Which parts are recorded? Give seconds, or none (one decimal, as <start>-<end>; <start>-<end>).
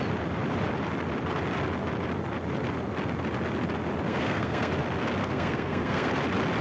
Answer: 0.0-4.1; 4.7-5.2; 6.1-6.6